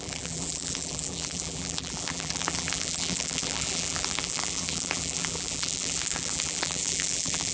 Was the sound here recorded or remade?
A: remade